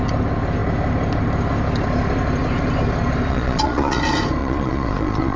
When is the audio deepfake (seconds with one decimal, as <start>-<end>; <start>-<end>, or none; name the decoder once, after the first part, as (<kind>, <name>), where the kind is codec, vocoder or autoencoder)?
3.3-4.0 (vocoder, Vocos); 4.4-5.4